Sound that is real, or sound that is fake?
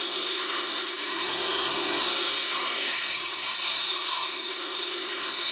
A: fake